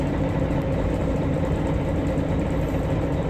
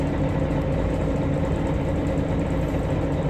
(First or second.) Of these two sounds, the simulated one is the first